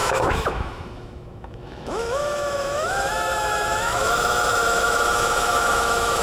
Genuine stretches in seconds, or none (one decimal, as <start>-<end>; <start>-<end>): none